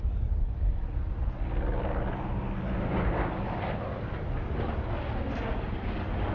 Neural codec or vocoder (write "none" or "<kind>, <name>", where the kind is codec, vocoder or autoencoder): none